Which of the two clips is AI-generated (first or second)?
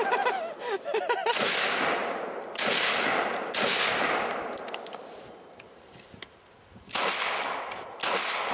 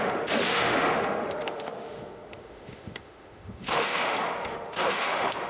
second